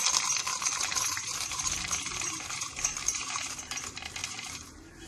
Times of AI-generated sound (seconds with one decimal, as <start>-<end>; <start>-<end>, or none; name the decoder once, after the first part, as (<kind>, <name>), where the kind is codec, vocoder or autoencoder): 0.5-3.6 (vocoder, BigVGAN v2); 4.2-5.1